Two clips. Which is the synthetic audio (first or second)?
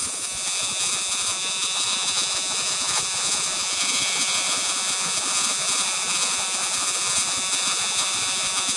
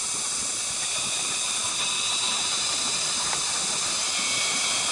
first